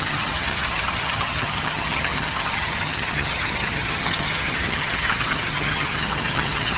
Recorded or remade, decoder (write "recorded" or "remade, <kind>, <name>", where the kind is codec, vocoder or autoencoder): remade, vocoder, HiFi-GAN